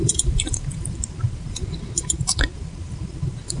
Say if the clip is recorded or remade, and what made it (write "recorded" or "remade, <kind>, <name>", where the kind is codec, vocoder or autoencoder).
remade, vocoder, BigVGAN v2